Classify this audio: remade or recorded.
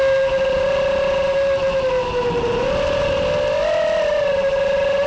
recorded